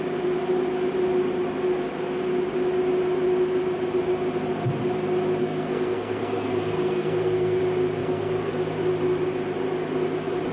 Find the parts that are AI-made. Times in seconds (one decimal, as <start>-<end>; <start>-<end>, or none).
5.4-7.6; 8.0-8.5